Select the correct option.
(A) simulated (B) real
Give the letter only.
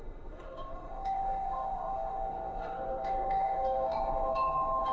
A